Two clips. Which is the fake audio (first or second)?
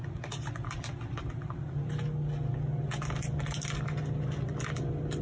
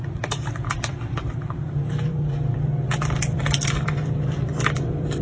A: second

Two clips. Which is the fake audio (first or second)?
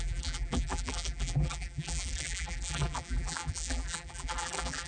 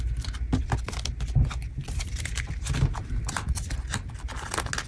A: first